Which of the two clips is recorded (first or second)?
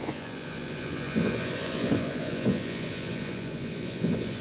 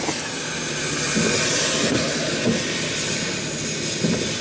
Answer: second